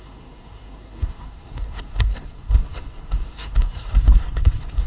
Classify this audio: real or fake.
fake